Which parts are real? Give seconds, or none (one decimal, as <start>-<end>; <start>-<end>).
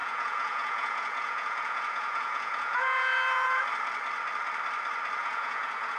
3.6-5.2